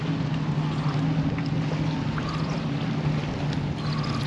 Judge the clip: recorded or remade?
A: recorded